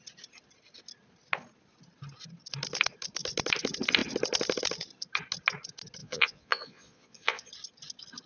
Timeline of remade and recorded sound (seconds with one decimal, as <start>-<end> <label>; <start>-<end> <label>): 0.0-6.0 recorded; 6.0-7.5 remade; 7.5-8.3 recorded